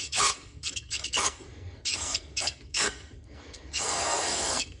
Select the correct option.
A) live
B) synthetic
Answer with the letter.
B